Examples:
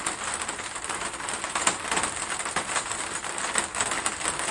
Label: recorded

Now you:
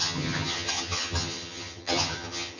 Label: remade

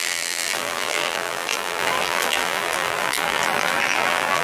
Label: remade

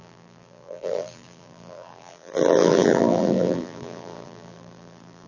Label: remade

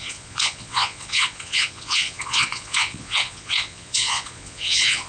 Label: remade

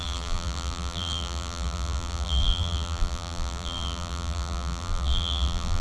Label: remade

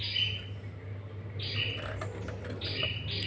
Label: recorded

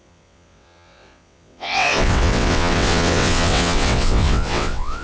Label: remade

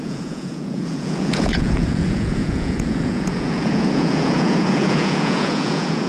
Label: remade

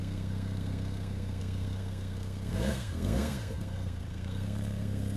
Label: remade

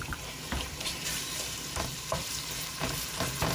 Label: remade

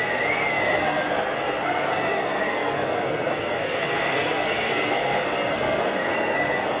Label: remade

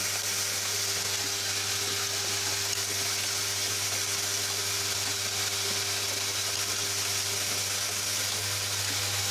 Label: recorded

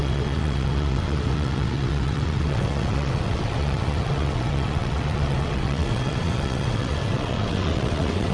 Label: remade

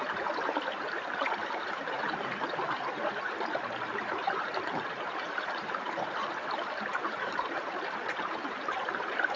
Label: remade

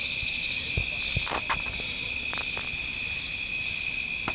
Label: recorded